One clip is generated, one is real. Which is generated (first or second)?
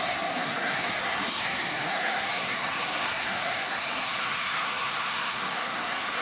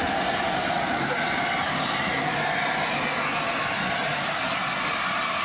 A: first